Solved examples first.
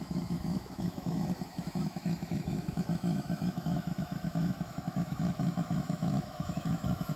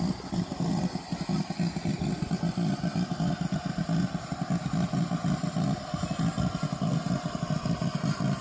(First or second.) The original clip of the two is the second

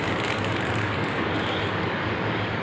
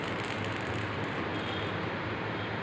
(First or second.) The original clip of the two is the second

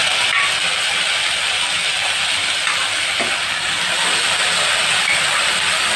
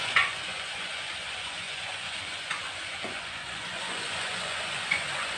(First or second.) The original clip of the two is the first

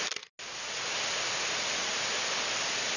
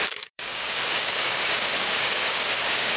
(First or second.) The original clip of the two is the first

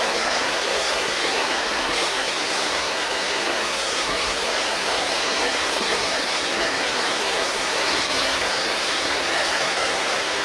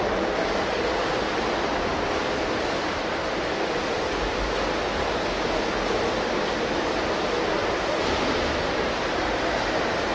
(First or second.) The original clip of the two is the second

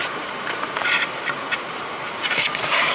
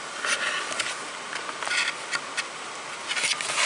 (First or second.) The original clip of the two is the second